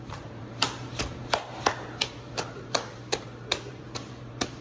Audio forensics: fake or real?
fake